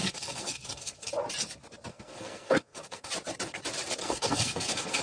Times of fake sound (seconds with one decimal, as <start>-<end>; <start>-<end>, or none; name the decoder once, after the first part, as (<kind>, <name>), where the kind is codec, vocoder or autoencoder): 0.0-1.1 (codec, SNAC); 1.9-3.1; 4.0-5.0